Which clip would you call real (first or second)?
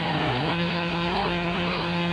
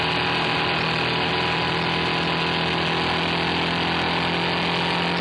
second